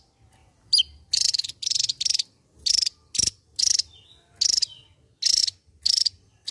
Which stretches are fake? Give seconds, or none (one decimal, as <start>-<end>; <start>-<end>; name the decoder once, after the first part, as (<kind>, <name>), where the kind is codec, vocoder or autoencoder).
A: 0.4-4.3 (vocoder, BigVGAN v2)